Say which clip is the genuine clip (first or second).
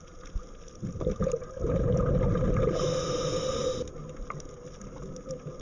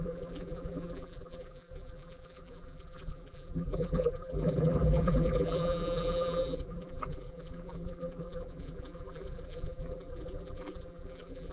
first